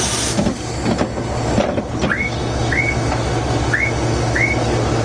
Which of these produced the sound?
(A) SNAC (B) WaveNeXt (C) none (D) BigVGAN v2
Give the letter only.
C